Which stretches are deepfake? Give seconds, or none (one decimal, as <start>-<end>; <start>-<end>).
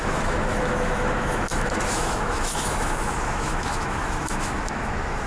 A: 0.0-5.3